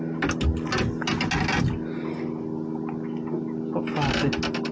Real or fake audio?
real